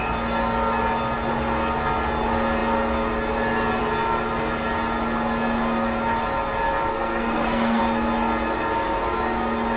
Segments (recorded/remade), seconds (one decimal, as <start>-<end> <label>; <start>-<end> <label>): 0.0-6.9 recorded; 6.9-7.8 remade; 7.8-9.8 recorded